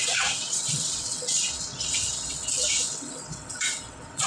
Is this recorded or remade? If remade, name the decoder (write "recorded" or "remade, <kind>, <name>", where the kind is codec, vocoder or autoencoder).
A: remade, vocoder, WaveNeXt